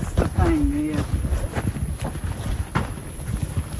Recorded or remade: recorded